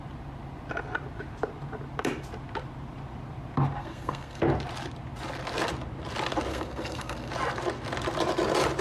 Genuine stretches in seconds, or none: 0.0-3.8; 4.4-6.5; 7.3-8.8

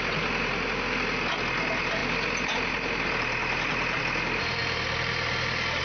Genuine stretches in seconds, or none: 0.0-5.8